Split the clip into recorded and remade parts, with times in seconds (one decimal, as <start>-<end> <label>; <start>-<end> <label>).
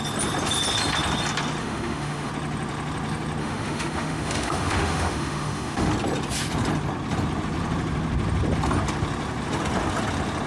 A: 0.0-1.6 recorded; 1.6-2.3 remade; 2.3-3.4 recorded; 3.4-5.9 remade; 5.9-10.5 recorded